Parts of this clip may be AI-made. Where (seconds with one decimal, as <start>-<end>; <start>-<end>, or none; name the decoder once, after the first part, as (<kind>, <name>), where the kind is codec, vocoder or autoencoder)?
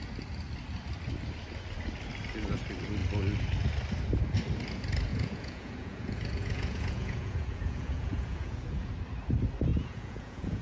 5.1-8.9 (vocoder, Vocos); 9.7-10.6